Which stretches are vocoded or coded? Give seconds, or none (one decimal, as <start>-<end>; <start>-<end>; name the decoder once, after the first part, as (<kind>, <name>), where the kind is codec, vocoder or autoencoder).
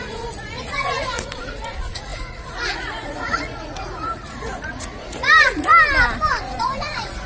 0.0-5.7 (vocoder, Vocos); 6.3-7.3